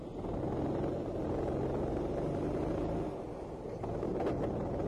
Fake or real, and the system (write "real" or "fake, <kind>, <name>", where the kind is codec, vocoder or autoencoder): real